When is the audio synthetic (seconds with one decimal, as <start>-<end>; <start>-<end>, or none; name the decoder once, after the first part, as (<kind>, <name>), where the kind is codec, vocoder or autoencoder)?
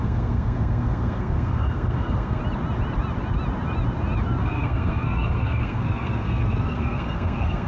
0.0-2.4 (codec, SNAC); 4.4-7.7